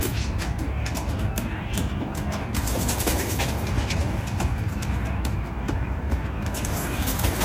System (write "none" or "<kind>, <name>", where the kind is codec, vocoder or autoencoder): codec, DAC